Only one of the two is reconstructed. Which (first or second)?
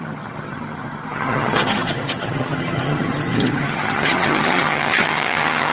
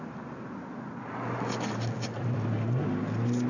first